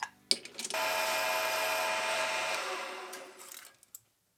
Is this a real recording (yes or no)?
yes